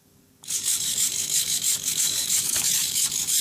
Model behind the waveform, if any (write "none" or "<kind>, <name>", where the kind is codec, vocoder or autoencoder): codec, DAC